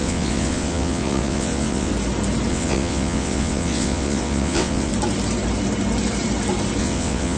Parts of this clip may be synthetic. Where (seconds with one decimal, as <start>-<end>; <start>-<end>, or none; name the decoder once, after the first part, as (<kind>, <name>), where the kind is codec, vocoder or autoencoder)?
0.0-1.9 (vocoder, WaveNeXt); 2.5-4.9; 6.8-7.4